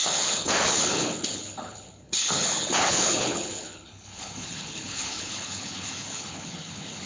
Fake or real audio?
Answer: fake